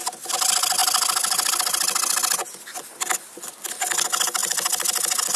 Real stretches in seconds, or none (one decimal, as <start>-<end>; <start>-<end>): 0.0-5.4